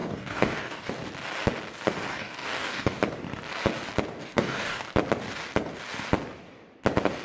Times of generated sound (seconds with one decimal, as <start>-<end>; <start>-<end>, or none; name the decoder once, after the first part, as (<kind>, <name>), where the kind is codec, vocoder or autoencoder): 0.0-0.9 (codec, DAC); 2.1-3.0; 4.2-4.9